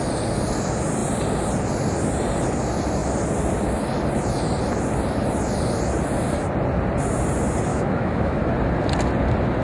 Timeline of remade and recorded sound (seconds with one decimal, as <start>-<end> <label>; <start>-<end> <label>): 0.0-7.7 recorded; 7.7-8.4 remade; 8.4-9.6 recorded